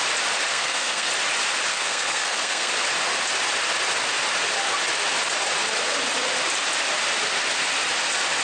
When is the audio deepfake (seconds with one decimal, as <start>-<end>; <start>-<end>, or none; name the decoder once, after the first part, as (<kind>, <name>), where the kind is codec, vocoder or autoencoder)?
0.5-1.1 (codec, SNAC); 1.7-2.7